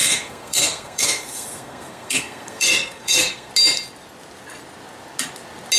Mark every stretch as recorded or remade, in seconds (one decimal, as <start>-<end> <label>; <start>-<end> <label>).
0.0-3.5 remade; 3.5-5.8 recorded

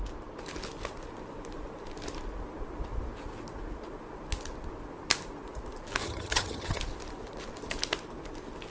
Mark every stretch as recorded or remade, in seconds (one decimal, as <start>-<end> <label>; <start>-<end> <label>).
0.0-6.0 recorded; 6.0-6.8 remade; 6.8-8.7 recorded

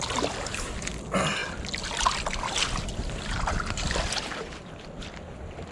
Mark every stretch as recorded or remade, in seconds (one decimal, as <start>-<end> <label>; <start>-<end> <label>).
0.0-5.7 recorded

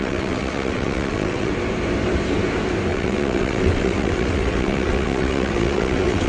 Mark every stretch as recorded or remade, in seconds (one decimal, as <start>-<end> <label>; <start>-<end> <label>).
0.0-1.5 remade; 1.5-2.9 recorded; 2.9-6.3 remade

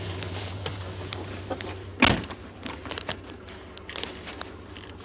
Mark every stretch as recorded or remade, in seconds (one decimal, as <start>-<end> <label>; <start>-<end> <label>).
0.0-5.0 recorded

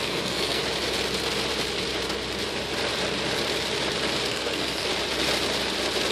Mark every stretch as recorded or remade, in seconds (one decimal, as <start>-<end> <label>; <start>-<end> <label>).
0.0-0.6 remade; 0.6-4.3 recorded; 4.3-4.9 remade; 4.9-6.1 recorded

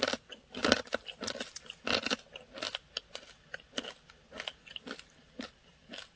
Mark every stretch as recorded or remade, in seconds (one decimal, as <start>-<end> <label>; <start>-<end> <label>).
0.0-6.2 recorded

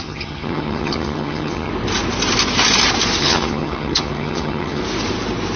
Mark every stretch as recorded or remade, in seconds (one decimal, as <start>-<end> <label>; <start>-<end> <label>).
0.0-1.7 remade; 1.7-3.2 recorded; 3.2-4.8 remade; 4.8-5.6 recorded